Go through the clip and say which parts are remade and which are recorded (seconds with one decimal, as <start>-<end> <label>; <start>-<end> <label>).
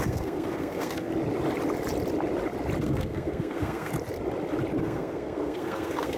0.0-1.1 remade; 1.1-2.8 recorded; 2.8-3.9 remade; 3.9-4.8 recorded; 4.8-6.2 remade